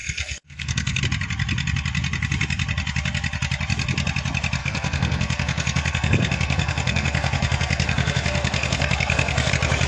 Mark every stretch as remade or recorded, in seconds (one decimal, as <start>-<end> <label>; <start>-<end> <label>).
0.0-1.0 remade; 1.0-4.6 recorded; 4.6-9.5 remade; 9.5-9.9 recorded